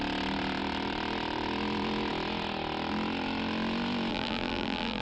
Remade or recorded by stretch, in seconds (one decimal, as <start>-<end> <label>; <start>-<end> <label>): 0.0-4.1 recorded; 4.1-5.0 remade